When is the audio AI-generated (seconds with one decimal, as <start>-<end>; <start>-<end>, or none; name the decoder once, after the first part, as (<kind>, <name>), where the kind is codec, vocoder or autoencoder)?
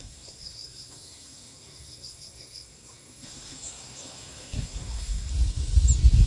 0.0-5.3 (codec, SNAC)